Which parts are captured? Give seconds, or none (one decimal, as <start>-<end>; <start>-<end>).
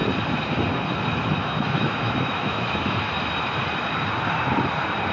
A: 0.0-1.4; 3.0-5.1